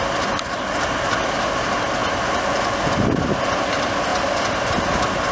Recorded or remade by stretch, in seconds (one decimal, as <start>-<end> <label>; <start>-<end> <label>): 0.0-5.3 recorded